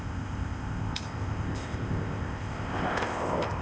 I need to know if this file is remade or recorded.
remade